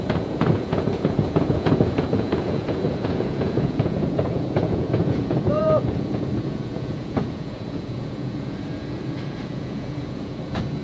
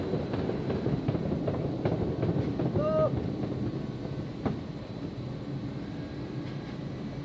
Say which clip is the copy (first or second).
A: first